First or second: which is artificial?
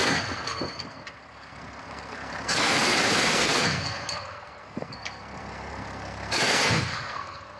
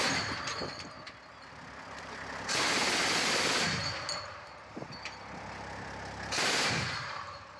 first